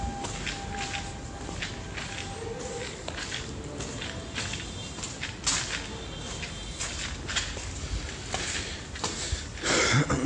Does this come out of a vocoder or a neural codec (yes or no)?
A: no